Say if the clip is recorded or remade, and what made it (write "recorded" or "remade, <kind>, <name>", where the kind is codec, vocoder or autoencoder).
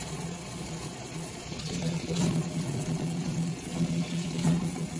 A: remade, vocoder, Vocos